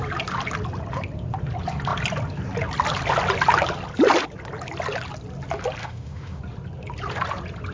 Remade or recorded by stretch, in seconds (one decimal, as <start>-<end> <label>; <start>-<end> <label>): 0.0-5.8 recorded; 5.8-6.4 remade; 6.4-7.7 recorded